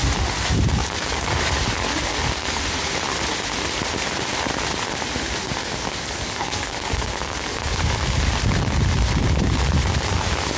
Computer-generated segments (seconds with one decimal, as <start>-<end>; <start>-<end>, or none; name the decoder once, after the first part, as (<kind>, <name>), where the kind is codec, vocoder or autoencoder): 0.8-2.6 (codec, DAC); 5.6-8.0